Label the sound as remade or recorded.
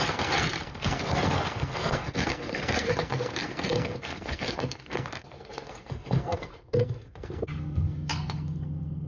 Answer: remade